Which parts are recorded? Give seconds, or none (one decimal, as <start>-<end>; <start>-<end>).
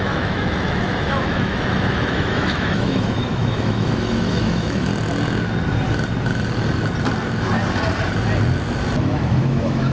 4.9-9.0